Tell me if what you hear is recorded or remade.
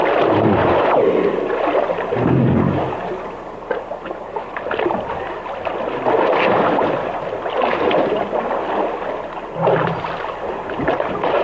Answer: recorded